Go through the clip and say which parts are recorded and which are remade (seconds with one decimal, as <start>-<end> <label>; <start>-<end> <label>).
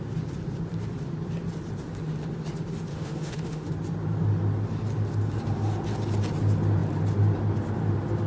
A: 0.0-2.9 recorded; 2.9-3.7 remade; 3.7-8.3 recorded